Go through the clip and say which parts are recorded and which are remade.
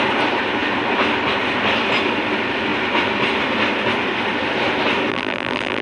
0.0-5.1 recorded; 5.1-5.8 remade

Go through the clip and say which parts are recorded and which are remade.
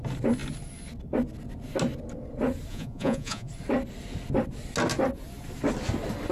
0.0-2.7 recorded; 2.7-3.5 remade; 3.5-6.3 recorded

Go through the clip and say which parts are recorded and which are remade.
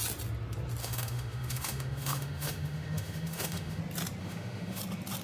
0.0-0.8 recorded; 0.8-3.8 remade; 3.8-4.2 recorded; 4.2-4.8 remade; 4.8-5.2 recorded